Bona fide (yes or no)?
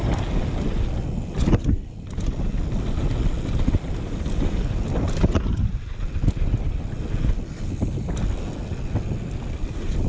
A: yes